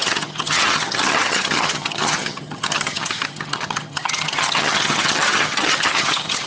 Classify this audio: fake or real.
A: fake